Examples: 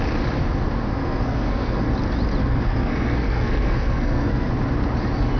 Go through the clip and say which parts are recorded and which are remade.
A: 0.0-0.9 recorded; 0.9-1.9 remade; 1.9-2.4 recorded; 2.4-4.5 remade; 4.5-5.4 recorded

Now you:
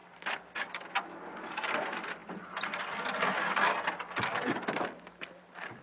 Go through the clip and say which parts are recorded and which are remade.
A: 0.0-5.8 recorded

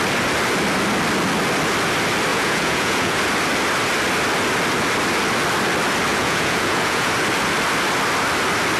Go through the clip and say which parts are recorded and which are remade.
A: 0.0-2.3 recorded; 2.3-3.2 remade; 3.2-6.1 recorded; 6.1-7.1 remade; 7.1-8.8 recorded